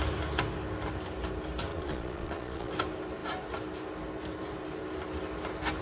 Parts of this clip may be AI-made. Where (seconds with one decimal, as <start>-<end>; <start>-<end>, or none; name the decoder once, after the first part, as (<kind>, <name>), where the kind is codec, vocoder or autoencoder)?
1.7-2.7 (vocoder, Vocos)